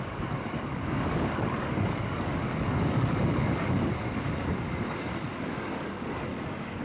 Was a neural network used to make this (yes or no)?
yes